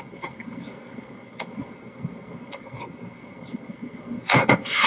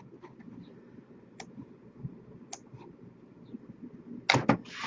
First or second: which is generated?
first